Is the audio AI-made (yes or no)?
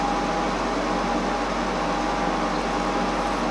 no